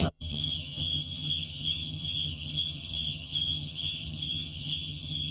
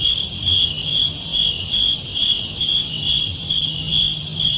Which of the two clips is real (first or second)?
second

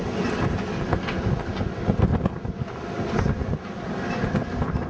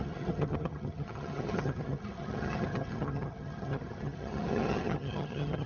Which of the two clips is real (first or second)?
first